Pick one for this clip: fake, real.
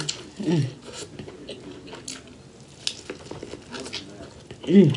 real